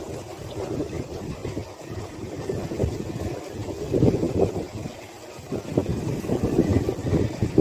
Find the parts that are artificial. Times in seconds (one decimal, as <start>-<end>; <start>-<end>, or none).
0.0-1.4; 6.0-6.7